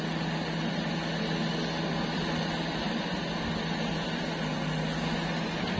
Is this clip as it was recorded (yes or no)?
yes